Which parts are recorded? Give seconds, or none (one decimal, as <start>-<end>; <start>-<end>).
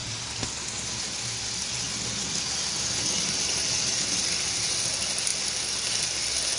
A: 0.0-6.6